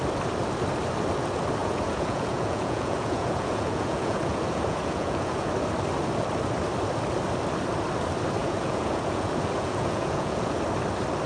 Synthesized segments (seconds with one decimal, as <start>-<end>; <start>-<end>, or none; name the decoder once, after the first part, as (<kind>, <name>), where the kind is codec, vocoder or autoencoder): 1.6-5.5 (vocoder, Vocos); 8.4-10.6